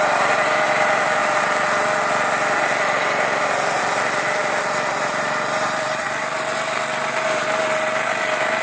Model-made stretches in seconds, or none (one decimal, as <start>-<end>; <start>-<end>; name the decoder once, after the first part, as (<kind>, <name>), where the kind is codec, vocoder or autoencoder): 5.1-6.0 (vocoder, BigVGAN v2)